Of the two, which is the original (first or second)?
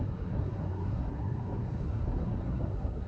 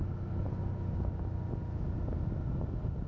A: second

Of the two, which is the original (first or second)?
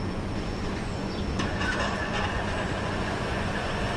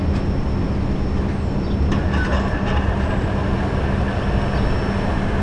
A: second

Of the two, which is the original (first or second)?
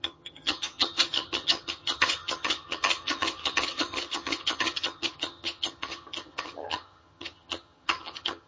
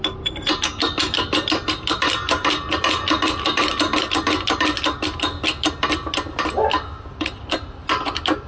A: second